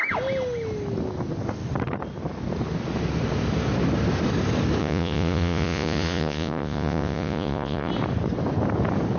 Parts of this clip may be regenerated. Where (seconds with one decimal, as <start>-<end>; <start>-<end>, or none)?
4.8-7.9